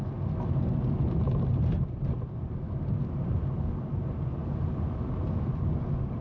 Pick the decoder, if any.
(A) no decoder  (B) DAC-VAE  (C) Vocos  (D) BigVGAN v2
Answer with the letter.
A